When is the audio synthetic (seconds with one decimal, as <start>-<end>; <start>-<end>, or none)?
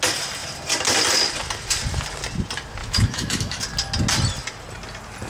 2.8-3.6